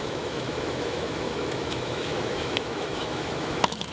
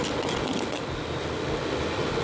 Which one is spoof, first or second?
first